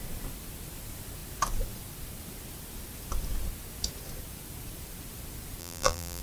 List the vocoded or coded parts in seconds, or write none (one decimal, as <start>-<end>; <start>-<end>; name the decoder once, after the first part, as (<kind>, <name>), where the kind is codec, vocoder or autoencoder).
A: 5.6-6.2 (vocoder, BigVGAN v2)